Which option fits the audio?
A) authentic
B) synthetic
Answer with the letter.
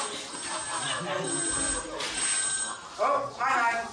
A